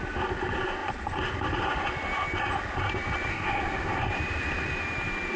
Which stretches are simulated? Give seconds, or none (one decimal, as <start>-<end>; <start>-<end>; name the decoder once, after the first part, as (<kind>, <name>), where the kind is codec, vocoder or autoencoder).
3.3-4.0 (codec, SNAC)